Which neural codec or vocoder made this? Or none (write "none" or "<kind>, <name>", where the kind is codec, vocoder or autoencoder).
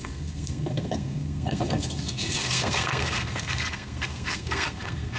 codec, SNAC